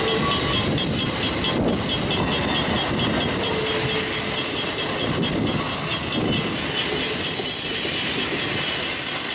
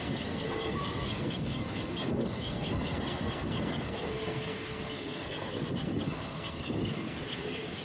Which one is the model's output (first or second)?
second